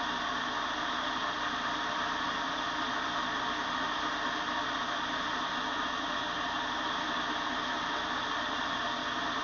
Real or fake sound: real